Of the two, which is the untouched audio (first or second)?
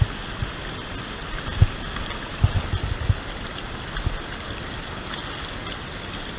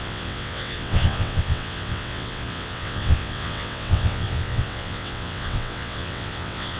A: first